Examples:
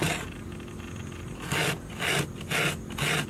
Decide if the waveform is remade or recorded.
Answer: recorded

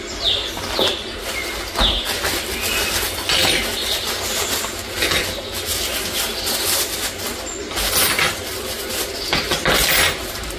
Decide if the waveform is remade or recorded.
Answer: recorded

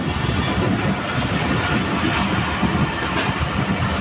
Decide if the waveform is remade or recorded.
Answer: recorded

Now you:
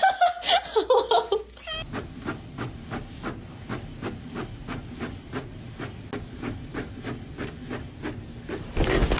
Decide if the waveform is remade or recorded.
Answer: recorded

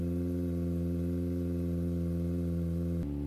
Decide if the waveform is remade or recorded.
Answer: recorded